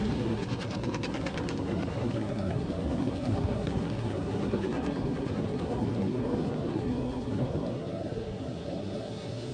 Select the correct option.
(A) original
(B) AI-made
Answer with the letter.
B